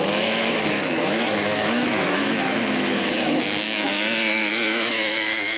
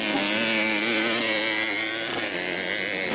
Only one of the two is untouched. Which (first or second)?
second